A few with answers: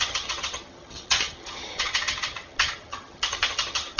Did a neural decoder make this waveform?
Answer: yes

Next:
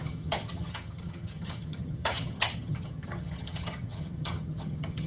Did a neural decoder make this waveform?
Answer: yes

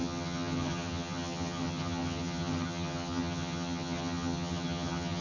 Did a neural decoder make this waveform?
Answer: yes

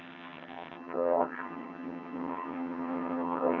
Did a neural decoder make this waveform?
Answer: yes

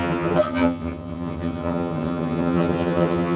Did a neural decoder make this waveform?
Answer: yes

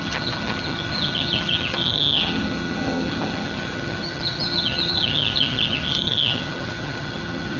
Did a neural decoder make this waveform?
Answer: yes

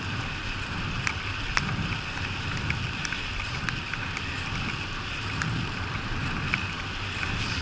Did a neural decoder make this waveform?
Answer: no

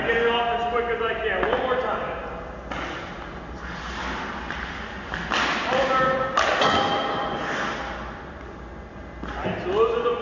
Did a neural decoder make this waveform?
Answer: no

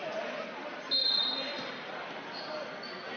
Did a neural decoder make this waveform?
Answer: no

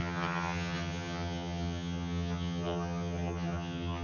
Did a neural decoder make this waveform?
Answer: yes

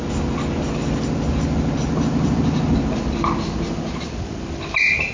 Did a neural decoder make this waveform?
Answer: no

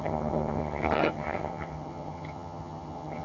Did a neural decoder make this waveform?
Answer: yes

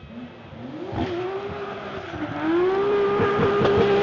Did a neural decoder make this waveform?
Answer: no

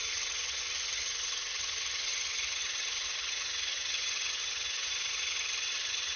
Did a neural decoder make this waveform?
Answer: yes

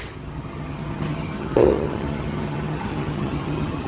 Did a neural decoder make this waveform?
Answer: yes